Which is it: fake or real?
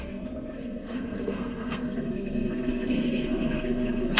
fake